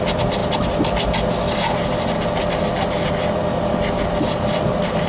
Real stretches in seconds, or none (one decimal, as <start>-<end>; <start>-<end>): 0.0-5.1